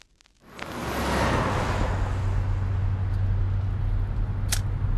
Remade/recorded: recorded